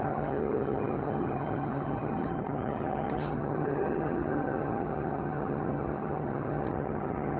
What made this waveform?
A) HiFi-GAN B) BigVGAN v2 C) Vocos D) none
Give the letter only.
A